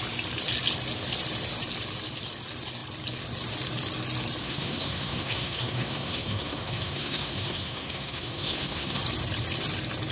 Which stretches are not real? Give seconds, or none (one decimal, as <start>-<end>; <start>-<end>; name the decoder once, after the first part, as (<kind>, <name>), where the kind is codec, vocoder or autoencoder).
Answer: 4.4-9.0 (codec, SNAC)